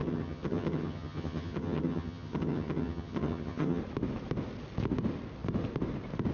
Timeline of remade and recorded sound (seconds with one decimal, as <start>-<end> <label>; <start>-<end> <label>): 0.0-3.8 remade; 3.8-6.3 recorded